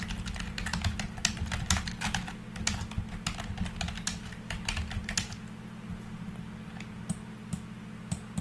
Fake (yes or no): no